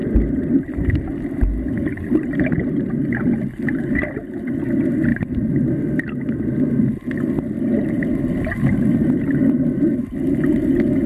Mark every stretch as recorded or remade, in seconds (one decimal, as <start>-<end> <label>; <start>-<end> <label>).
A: 0.0-1.9 recorded; 1.9-3.4 remade; 3.4-11.1 recorded